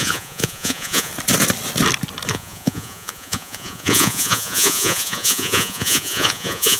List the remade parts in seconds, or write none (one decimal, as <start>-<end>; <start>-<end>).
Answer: 0.0-1.1; 2.3-6.8